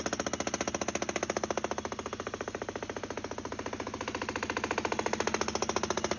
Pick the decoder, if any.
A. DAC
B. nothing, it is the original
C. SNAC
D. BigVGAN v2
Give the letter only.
B